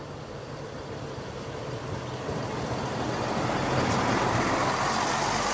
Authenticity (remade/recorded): recorded